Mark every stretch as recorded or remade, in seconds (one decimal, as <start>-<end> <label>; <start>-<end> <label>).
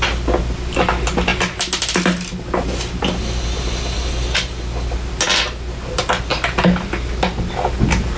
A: 0.0-8.2 recorded